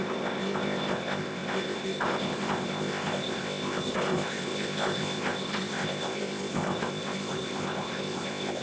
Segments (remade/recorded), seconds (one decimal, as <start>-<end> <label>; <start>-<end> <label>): 0.0-8.6 remade